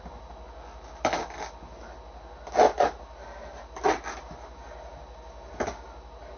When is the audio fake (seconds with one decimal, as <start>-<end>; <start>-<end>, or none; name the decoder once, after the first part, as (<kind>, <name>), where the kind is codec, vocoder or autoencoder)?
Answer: none